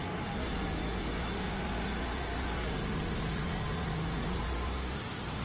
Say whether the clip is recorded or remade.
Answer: recorded